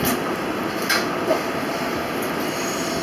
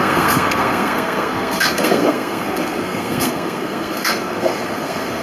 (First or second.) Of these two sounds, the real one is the first